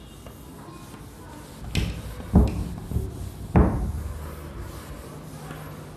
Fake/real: real